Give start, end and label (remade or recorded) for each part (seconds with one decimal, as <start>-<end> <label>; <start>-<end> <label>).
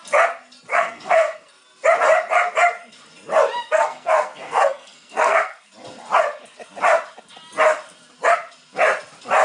0.0-0.7 recorded; 0.7-1.5 remade; 1.5-3.6 recorded; 3.6-5.7 remade; 5.7-9.4 recorded